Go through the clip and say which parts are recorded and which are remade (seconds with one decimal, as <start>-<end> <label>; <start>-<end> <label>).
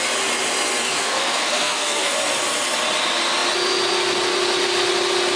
0.0-0.8 recorded; 0.8-2.1 remade; 2.1-5.4 recorded